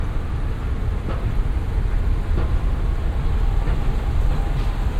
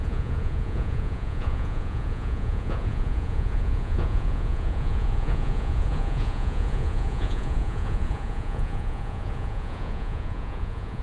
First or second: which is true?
first